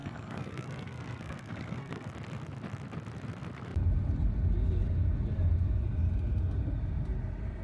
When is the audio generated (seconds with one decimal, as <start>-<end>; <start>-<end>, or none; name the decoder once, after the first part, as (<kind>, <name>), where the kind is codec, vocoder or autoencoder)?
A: 0.0-2.1 (codec, SNAC)